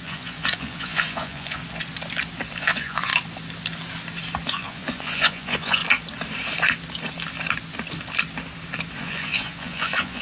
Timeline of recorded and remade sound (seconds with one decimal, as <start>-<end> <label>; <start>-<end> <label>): 0.0-1.6 remade; 1.6-2.6 recorded; 2.6-3.1 remade; 3.1-4.5 recorded; 4.5-5.8 remade; 5.8-9.0 recorded; 9.0-10.2 remade